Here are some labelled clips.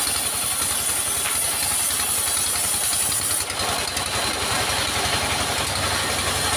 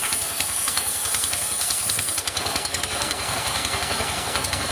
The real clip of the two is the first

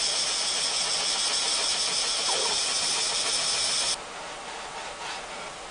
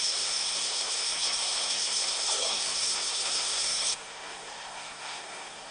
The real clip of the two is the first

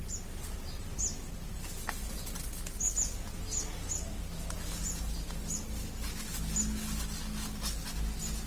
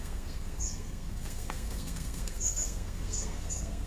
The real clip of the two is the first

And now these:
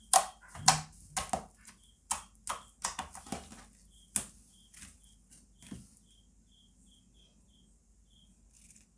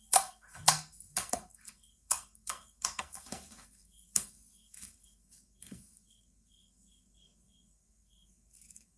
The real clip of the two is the first